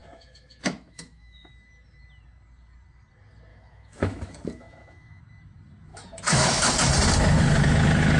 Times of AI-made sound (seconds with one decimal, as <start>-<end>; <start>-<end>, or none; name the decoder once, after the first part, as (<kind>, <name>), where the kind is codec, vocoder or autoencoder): 0.0-1.5 (autoencoder, DAC-VAE); 3.5-5.2; 5.9-6.7